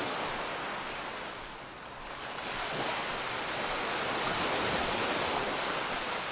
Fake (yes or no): no